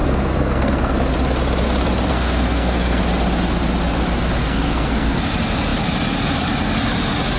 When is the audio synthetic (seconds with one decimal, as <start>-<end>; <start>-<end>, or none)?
0.0-1.1; 2.1-3.0; 4.4-5.2